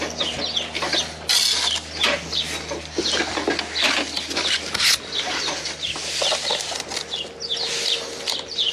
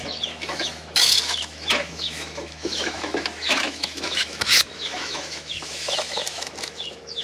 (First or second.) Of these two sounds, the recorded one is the first